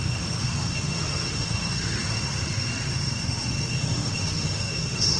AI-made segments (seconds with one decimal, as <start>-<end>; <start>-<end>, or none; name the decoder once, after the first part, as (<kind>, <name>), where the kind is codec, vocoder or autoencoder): 0.0-5.2 (autoencoder, DAC-VAE)